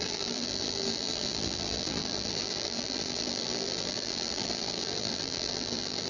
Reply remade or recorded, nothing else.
remade